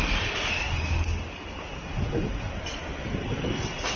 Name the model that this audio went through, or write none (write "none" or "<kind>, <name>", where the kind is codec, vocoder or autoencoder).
none